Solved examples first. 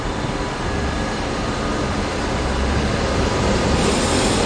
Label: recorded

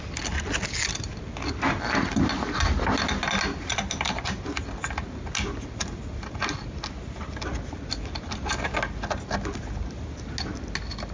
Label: recorded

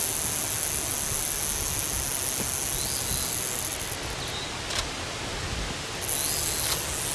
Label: recorded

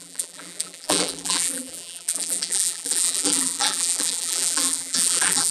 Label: remade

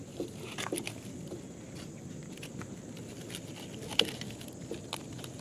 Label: recorded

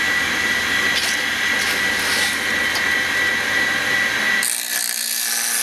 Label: recorded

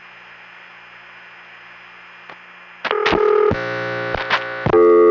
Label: recorded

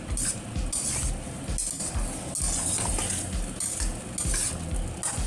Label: recorded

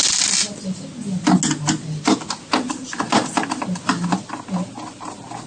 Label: recorded